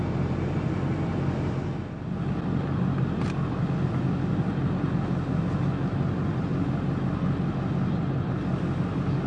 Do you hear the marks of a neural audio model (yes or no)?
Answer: no